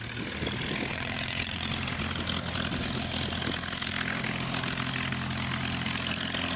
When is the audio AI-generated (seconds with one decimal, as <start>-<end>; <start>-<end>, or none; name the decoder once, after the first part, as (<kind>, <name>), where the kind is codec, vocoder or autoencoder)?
0.9-1.7 (vocoder, WaveNeXt)